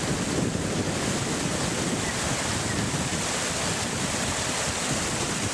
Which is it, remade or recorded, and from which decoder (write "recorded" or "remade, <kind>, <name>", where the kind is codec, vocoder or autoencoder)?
recorded